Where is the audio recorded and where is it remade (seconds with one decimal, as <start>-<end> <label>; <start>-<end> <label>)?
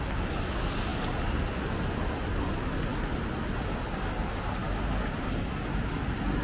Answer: 0.0-6.4 recorded